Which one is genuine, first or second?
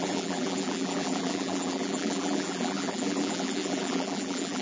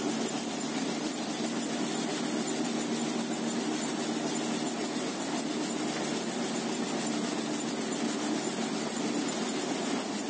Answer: second